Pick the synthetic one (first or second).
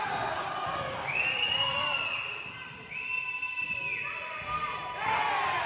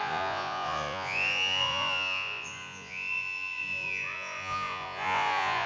second